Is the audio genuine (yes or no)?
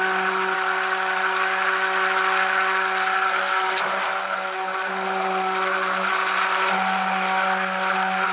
yes